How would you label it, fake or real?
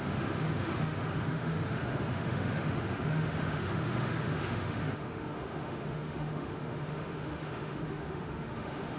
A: fake